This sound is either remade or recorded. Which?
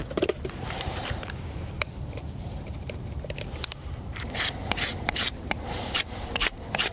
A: remade